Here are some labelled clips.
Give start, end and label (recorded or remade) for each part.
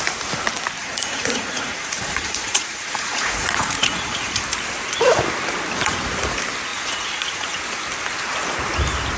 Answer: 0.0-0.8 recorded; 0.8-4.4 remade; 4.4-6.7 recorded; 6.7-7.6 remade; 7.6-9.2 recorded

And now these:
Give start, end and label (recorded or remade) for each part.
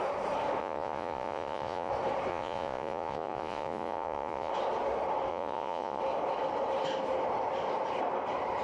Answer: 0.0-0.6 recorded; 0.6-1.9 remade; 1.9-2.3 recorded; 2.3-4.5 remade; 4.5-5.3 recorded; 5.3-6.0 remade; 6.0-8.6 recorded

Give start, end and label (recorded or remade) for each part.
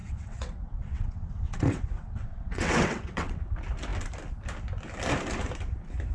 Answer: 0.0-3.4 remade; 3.4-6.1 recorded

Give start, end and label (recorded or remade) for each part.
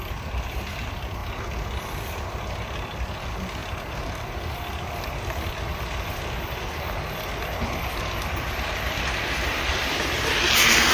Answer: 0.0-10.9 recorded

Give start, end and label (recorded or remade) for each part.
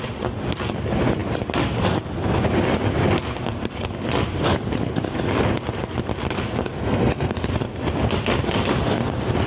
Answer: 0.0-6.8 recorded; 6.8-7.5 remade; 7.5-9.5 recorded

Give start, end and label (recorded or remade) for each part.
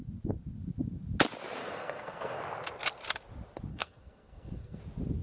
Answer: 0.0-1.6 recorded; 1.6-2.4 remade; 2.4-3.7 recorded; 3.7-4.8 remade; 4.8-5.2 recorded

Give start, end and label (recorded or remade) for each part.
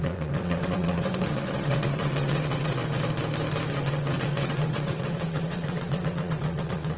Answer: 0.0-2.8 remade; 2.8-3.7 recorded; 3.7-7.0 remade